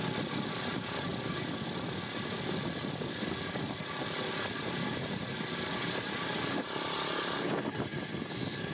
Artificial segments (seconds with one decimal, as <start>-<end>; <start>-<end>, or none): none